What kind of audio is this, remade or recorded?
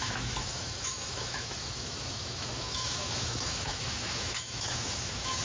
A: remade